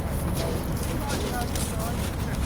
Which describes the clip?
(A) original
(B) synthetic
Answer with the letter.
A